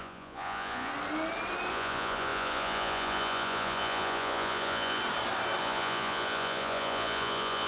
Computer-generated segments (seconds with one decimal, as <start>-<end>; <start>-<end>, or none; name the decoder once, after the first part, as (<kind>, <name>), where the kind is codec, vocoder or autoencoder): 0.0-0.9 (vocoder, Vocos); 1.7-5.0; 5.6-7.7

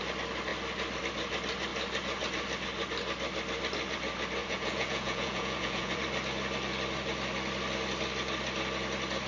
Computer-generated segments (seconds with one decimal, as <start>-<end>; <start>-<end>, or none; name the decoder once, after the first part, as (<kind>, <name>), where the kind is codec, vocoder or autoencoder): 4.4-6.0 (vocoder, Vocos)

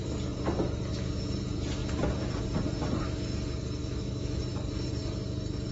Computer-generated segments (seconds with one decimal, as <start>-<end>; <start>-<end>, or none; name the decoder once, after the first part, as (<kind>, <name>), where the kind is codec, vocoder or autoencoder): 3.8-4.4 (autoencoder, DAC-VAE)

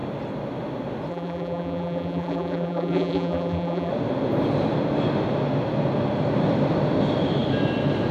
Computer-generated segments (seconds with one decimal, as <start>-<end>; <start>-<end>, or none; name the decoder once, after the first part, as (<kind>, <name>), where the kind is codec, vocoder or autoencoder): 1.1-3.9 (vocoder, BigVGAN v2)

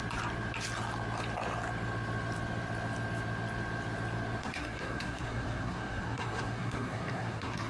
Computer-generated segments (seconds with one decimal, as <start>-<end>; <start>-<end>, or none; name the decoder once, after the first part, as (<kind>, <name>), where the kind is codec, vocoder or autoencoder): 4.4-7.7 (codec, SNAC)